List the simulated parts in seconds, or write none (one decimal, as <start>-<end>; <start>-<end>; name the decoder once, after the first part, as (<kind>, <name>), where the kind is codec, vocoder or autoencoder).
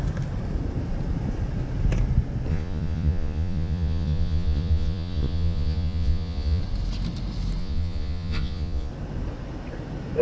2.5-6.6 (vocoder, Vocos); 7.6-8.9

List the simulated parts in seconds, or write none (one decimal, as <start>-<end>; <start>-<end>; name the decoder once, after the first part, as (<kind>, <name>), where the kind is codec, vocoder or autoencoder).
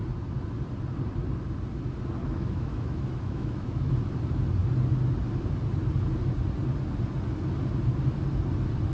2.2-3.9 (autoencoder, DAC-VAE)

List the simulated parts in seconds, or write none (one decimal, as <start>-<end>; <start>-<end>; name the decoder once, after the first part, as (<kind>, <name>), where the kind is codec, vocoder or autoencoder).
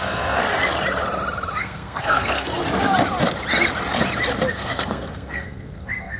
0.0-0.4 (codec, SNAC); 1.6-2.6; 4.5-6.2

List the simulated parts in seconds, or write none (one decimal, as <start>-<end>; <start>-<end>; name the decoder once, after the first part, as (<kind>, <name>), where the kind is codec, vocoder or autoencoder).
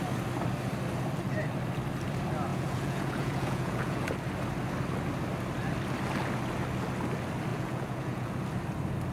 2.5-4.1 (vocoder, Vocos); 7.5-8.3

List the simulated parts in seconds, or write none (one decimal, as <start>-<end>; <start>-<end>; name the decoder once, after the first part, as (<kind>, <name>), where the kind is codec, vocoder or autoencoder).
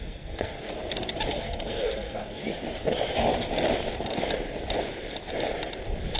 0.0-0.6 (codec, SNAC); 1.3-2.4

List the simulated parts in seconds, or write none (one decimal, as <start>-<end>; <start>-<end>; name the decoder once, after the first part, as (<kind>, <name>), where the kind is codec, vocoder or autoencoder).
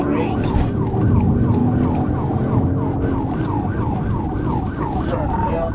none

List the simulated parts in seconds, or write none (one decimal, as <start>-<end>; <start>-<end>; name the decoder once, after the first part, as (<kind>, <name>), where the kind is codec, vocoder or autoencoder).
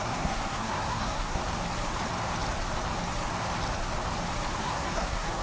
0.0-1.4 (codec, SNAC); 4.6-5.4